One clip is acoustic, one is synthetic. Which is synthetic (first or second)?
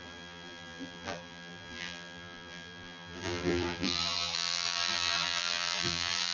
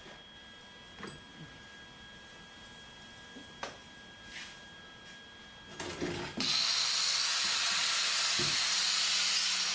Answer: first